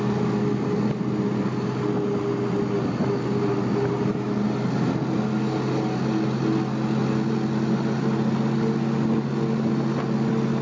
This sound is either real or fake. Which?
real